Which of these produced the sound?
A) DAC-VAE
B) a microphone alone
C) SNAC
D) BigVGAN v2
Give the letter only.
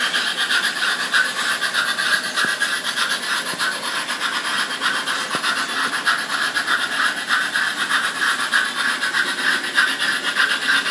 B